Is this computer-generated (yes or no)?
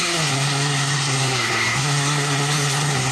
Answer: yes